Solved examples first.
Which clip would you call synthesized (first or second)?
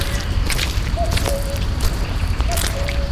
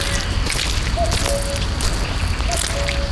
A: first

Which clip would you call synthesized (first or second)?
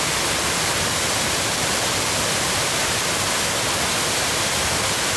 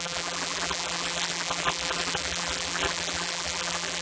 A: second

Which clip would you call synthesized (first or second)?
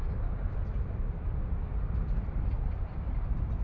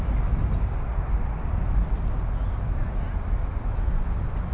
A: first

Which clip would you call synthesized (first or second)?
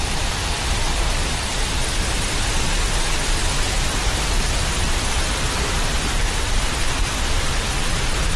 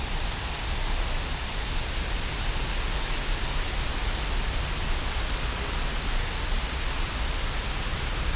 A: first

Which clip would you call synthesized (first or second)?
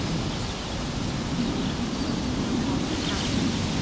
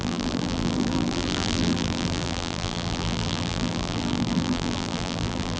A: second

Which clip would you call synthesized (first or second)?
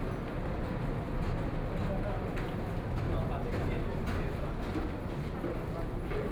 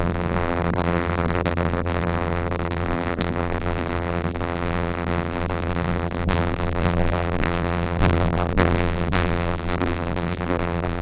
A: second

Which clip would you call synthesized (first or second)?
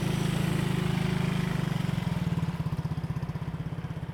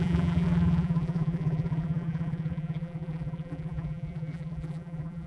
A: second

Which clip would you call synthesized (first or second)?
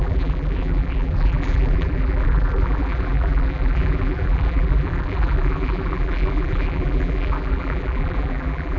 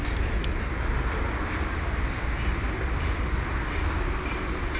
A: first